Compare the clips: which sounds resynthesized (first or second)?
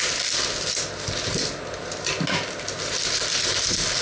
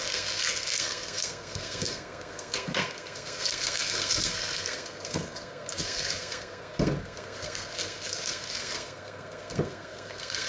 second